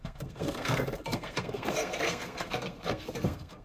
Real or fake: fake